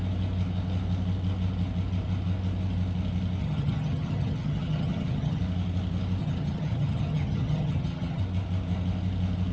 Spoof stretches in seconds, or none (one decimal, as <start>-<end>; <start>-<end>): 3.4-5.4; 6.2-8.2